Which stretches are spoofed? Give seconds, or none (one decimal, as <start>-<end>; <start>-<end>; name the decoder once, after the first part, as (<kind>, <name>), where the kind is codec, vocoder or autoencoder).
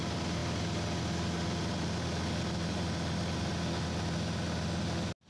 none